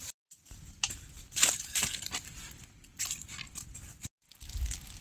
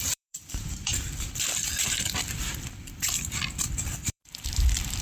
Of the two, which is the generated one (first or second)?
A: second